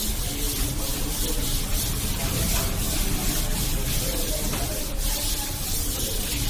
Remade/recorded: recorded